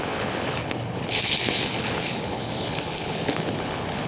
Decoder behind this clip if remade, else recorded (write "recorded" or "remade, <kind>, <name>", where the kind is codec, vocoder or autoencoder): remade, codec, HILCodec